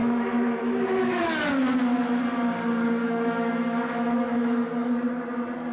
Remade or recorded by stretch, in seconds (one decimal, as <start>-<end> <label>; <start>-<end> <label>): 0.0-1.2 remade; 1.2-3.0 recorded; 3.0-4.9 remade; 4.9-5.7 recorded